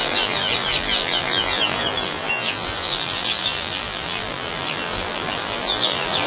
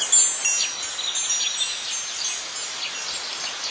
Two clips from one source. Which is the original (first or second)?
second